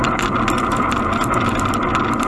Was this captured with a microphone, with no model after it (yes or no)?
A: yes